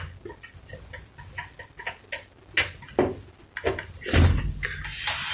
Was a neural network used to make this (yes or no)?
no